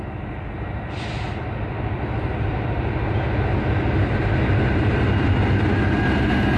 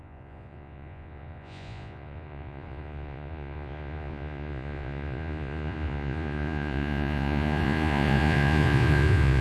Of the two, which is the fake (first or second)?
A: second